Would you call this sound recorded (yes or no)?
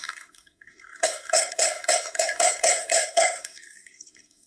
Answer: no